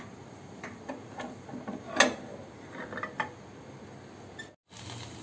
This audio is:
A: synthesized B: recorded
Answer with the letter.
B